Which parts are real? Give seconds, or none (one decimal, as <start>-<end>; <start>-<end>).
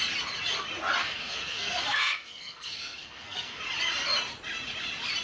0.0-1.0; 3.6-5.2